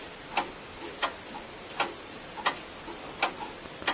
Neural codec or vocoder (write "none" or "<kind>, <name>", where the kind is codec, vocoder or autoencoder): none